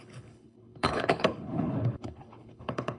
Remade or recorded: remade